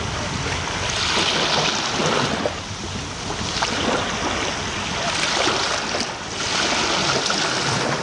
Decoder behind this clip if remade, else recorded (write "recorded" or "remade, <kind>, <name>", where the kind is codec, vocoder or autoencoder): recorded